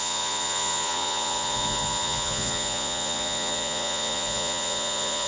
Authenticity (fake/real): fake